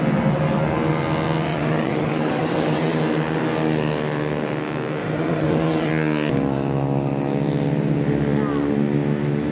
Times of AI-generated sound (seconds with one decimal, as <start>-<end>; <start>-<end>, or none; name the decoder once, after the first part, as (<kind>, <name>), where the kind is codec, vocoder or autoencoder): 1.5-3.0 (vocoder, WaveNeXt); 5.0-5.9